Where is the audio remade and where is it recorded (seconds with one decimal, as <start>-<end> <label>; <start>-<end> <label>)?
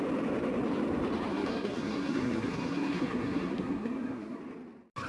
0.0-1.3 recorded; 1.3-4.4 remade; 4.4-5.1 recorded